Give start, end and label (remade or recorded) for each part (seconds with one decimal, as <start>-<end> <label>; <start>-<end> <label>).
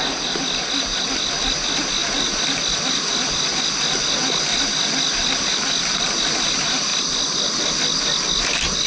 0.0-8.9 recorded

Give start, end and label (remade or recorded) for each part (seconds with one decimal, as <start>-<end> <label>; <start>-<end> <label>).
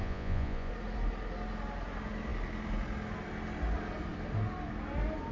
0.0-0.7 remade; 0.7-5.3 recorded